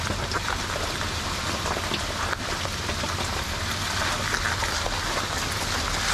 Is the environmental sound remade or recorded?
recorded